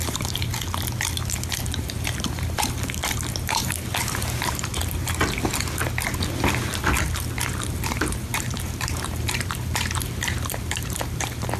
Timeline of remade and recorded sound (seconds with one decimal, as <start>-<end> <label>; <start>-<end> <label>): 0.0-0.5 remade; 0.5-1.8 recorded; 1.8-4.7 remade; 4.7-7.5 recorded; 7.5-11.6 remade